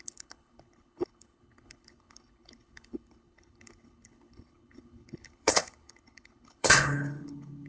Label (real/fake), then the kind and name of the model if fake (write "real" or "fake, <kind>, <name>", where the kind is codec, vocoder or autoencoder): fake, codec, HILCodec